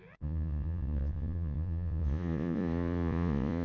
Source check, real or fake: fake